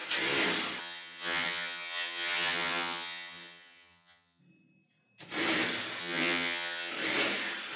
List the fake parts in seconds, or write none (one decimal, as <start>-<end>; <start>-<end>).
0.8-4.4; 6.0-6.9